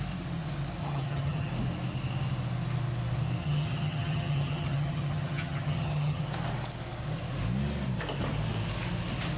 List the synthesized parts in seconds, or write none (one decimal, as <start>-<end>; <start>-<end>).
0.8-1.5; 3.4-6.2